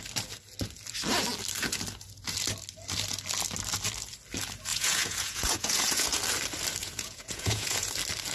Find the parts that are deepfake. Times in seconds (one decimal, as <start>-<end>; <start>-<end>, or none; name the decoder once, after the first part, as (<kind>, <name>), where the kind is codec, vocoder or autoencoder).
4.7-6.2 (vocoder, Vocos); 6.8-7.9